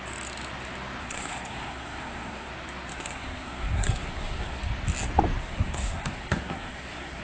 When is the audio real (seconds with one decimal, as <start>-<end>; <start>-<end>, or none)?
0.0-1.0; 2.5-2.9; 4.6-5.4